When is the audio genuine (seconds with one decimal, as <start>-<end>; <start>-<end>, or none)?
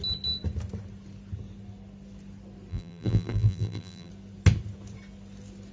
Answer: 0.0-2.7; 4.1-5.7